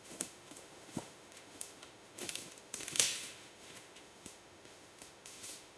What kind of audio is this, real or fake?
fake